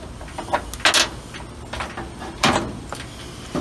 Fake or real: real